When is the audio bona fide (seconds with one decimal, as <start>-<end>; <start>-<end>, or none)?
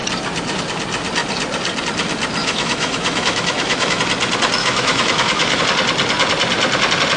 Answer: 0.0-2.4; 4.0-4.6; 5.6-7.2